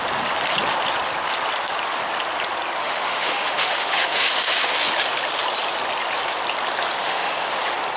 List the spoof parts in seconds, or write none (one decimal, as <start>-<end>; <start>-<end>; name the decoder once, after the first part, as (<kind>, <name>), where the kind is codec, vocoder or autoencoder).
2.8-4.7 (autoencoder, DAC-VAE); 7.0-7.6

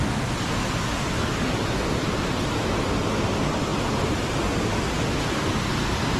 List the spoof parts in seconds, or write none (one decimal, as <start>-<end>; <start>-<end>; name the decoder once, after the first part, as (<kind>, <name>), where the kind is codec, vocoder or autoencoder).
none

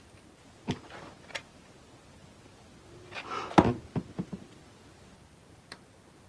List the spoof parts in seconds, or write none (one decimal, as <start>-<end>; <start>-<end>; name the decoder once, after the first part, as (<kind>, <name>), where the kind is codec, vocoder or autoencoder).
none

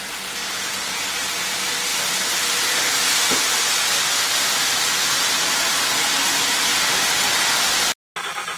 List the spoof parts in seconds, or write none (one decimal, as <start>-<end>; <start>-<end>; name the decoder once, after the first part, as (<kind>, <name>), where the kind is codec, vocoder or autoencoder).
none